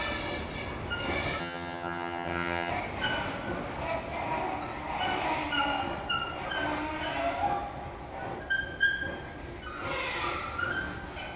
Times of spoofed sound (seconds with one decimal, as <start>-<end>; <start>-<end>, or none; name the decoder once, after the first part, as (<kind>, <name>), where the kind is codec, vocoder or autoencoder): 1.4-2.7 (vocoder, HiFi-GAN)